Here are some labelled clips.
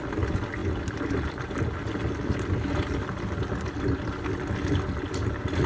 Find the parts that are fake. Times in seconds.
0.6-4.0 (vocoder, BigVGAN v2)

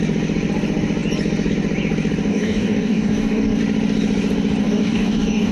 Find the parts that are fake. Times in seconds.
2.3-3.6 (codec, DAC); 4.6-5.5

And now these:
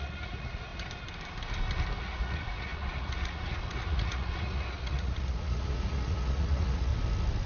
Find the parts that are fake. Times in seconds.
0.0-0.7 (vocoder, Vocos); 2.0-6.9

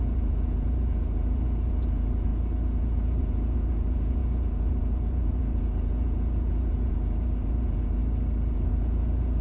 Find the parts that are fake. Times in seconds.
0.0-2.3 (vocoder, Vocos); 2.8-8.0; 8.5-9.4

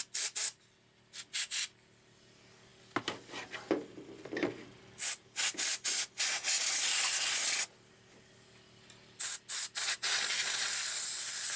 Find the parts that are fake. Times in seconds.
none

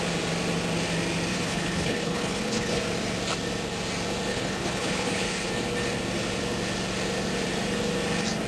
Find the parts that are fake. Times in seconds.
1.3-2.8 (codec, HILCodec); 4.3-5.5

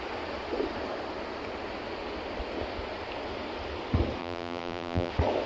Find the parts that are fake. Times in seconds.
4.2-5.1 (vocoder, BigVGAN v2)